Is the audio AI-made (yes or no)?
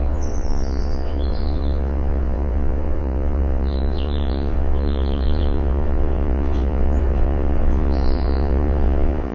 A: yes